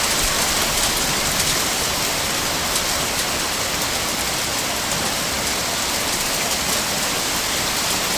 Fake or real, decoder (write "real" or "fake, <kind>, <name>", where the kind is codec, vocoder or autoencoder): real